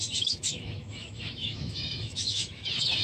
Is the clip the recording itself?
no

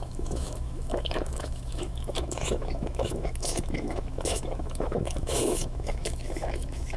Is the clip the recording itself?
no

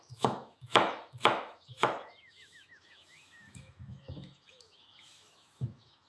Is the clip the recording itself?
no